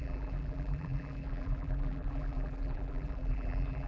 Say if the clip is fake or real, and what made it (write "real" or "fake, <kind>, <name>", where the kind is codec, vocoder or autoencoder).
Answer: fake, vocoder, BigVGAN v2